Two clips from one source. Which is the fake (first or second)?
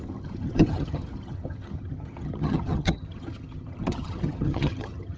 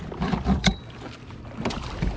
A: first